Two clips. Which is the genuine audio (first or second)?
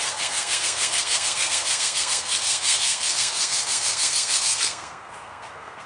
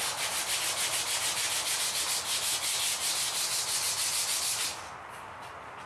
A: second